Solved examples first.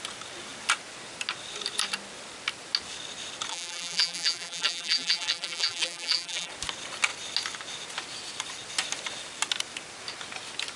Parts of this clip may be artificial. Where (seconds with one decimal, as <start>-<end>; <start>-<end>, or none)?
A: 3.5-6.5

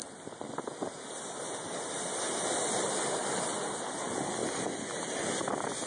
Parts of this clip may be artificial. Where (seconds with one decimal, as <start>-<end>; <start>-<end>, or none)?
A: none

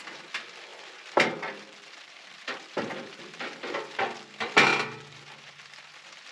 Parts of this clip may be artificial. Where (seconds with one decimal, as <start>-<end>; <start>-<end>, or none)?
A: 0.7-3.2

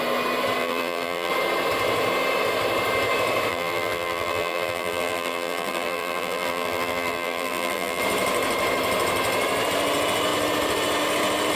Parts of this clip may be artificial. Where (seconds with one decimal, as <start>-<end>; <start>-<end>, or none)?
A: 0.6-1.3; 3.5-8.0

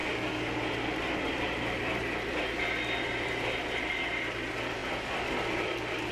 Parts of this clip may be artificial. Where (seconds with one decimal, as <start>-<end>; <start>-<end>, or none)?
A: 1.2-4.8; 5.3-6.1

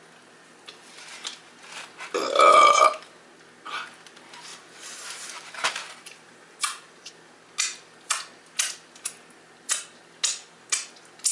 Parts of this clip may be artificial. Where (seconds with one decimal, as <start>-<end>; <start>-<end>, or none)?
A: 4.5-7.1

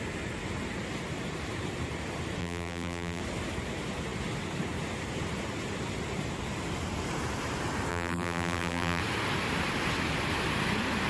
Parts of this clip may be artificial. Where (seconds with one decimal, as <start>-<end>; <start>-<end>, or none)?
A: 2.4-3.2; 7.9-9.0